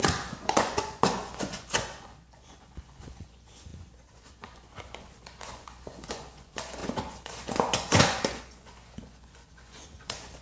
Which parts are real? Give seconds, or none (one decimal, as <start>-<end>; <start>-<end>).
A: none